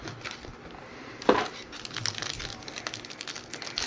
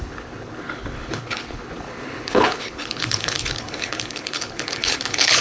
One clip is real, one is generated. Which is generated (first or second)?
second